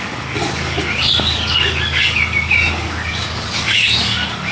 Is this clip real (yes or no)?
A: no